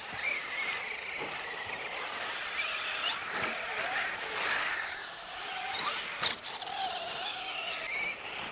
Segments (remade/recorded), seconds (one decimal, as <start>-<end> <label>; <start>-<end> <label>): 0.0-8.5 recorded